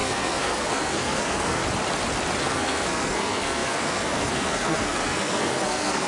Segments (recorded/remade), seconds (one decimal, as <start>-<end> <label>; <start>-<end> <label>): 0.0-1.6 remade; 1.6-2.4 recorded; 2.4-6.1 remade